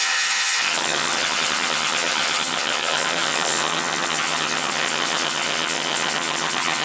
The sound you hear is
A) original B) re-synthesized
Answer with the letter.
B